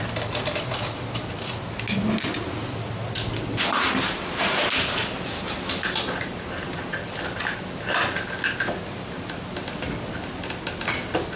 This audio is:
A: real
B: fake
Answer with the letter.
A